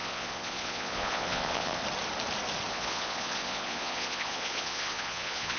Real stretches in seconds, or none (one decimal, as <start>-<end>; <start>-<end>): 1.8-2.7